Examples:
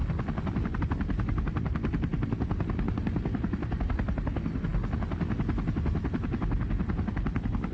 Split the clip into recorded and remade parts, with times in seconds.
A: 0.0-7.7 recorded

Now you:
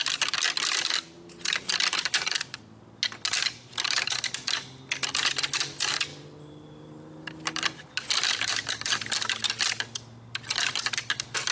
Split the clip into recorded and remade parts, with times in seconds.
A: 0.0-11.5 recorded